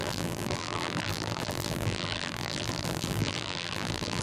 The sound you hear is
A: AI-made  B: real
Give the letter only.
A